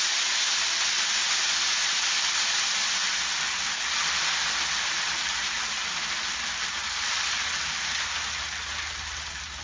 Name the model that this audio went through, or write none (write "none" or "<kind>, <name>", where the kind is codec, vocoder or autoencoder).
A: none